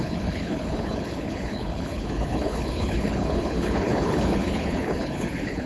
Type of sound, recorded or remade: remade